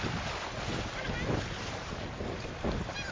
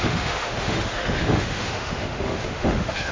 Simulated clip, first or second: second